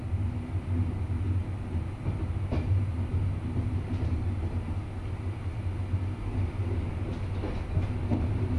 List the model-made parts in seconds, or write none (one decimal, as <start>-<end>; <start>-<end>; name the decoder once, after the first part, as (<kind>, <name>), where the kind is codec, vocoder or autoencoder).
6.6-7.1 (vocoder, BigVGAN v2)